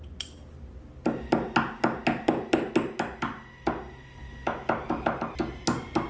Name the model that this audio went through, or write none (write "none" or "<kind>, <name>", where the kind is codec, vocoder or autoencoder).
none